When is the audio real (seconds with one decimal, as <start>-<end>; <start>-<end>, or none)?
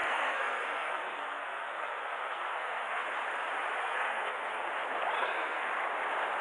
3.2-3.8; 4.7-5.2; 5.7-6.4